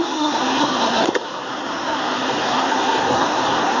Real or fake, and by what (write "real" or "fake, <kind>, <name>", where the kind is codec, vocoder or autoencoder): fake, codec, SNAC